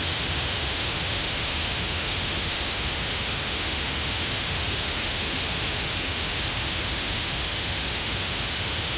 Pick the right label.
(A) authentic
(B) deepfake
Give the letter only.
B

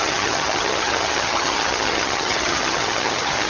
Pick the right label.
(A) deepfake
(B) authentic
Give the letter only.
A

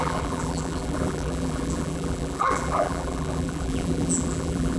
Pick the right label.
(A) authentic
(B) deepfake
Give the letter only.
B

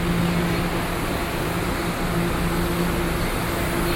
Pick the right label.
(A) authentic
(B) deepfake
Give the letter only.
A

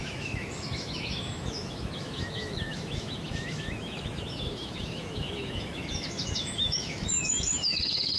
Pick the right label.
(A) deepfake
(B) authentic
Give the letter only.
A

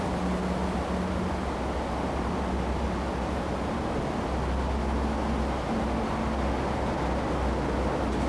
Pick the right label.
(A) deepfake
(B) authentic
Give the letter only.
B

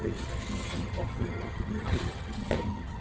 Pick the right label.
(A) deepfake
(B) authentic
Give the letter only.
A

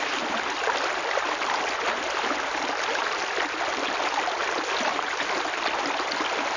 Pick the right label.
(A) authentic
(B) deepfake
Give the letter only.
A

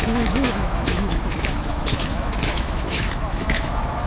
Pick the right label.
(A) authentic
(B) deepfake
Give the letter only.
B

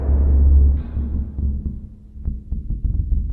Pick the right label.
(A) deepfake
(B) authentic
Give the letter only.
B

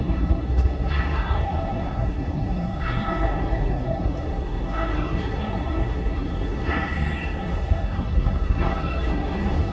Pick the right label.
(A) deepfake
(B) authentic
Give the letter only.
A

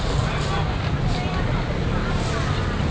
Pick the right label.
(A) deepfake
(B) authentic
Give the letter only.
B